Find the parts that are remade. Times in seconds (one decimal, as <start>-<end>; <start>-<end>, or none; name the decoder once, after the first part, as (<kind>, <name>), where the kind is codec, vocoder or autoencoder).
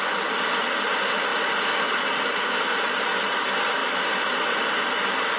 none